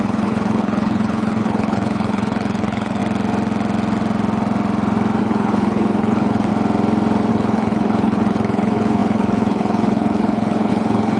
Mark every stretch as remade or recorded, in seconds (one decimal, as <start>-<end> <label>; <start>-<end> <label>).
0.0-3.0 remade; 3.0-5.2 recorded; 5.2-6.5 remade; 6.5-7.3 recorded; 7.3-11.2 remade